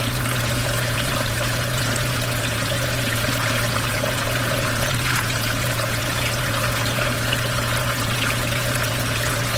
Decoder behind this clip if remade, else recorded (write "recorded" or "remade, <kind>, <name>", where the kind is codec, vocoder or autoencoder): remade, vocoder, Vocos